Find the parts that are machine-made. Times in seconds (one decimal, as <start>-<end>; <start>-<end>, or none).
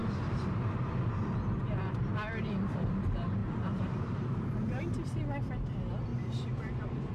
0.0-1.6; 3.4-4.8; 6.1-7.1